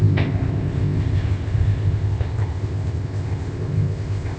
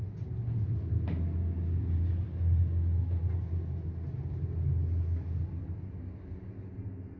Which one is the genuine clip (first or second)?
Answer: second